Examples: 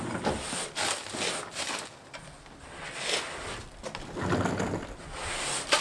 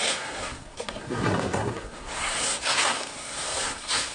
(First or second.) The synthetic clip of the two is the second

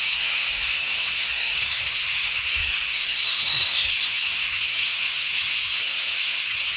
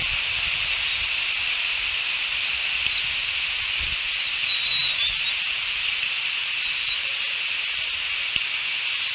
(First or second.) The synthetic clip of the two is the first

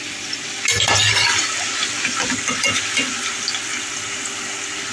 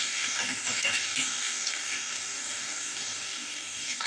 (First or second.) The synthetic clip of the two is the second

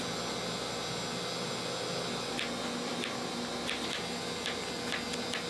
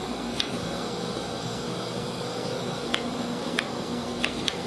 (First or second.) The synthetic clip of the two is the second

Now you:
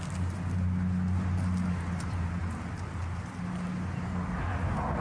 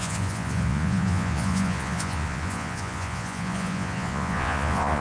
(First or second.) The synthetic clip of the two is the second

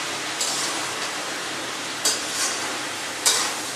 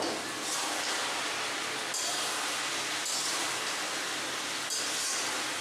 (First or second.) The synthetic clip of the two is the first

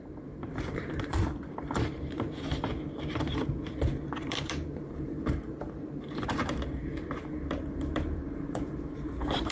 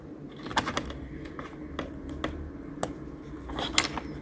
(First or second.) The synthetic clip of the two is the first